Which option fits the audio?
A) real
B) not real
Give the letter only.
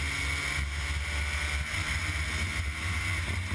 A